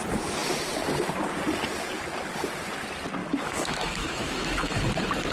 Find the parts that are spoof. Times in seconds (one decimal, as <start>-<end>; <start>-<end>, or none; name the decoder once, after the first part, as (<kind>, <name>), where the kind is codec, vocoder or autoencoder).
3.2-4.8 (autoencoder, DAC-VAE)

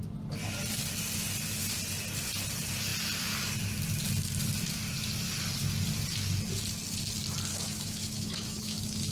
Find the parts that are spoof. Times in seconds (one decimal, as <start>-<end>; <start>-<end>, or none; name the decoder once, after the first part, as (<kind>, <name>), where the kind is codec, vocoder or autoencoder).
7.5-9.1 (autoencoder, DAC-VAE)

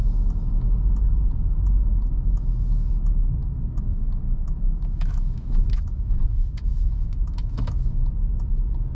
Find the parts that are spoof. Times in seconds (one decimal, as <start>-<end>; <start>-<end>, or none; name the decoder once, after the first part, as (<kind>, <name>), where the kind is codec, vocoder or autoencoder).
0.0-0.5 (autoencoder, DAC-VAE); 1.9-2.9; 3.4-8.1

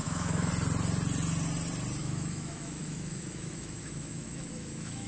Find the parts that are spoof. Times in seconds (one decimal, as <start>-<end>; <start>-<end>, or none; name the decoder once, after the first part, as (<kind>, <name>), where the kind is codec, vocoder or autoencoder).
0.0-0.5 (autoencoder, DAC-VAE); 2.0-5.1